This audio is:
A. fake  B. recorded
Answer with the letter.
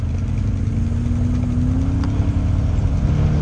B